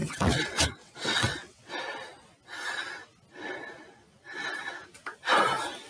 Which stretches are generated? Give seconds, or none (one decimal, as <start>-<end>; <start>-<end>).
0.0-1.7